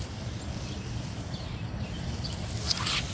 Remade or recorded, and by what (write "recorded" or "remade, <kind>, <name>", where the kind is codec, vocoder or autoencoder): recorded